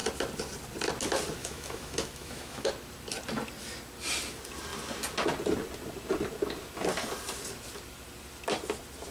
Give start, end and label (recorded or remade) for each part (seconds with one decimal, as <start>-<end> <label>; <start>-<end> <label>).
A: 0.0-1.4 recorded; 1.4-2.7 remade; 2.7-9.1 recorded